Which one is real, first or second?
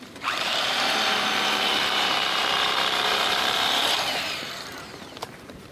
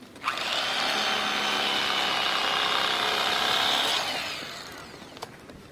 second